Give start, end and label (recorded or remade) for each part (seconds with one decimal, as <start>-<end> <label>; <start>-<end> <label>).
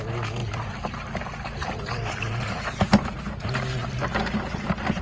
0.0-0.4 recorded; 0.4-3.4 remade; 3.4-3.8 recorded; 3.8-4.4 remade; 4.4-5.0 recorded